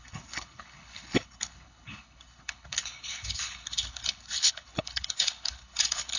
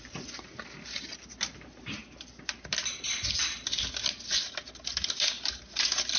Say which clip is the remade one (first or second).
first